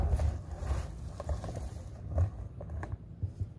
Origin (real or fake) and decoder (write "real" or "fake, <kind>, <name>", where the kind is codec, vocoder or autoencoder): real